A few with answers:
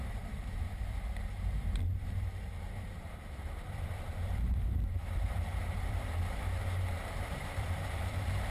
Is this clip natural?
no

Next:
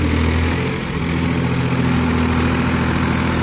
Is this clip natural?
yes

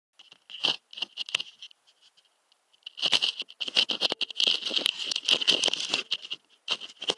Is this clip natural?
yes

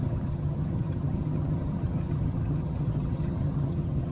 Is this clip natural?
no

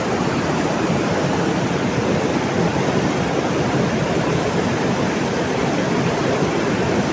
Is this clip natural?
yes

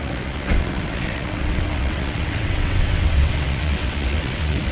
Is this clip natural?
no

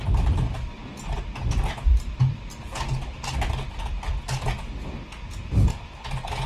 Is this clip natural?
yes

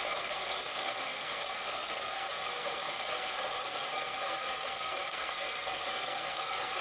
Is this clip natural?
no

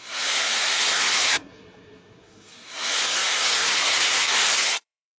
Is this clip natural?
no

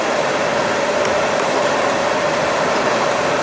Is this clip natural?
yes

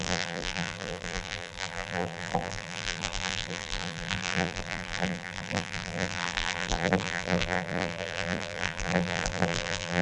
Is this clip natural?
no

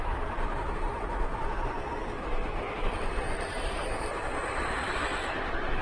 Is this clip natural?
no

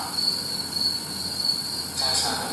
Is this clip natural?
yes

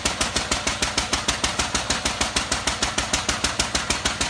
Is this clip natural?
yes